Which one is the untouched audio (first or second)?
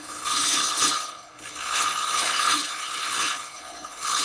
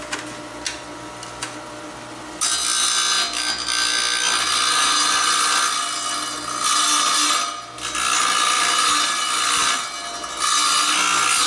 second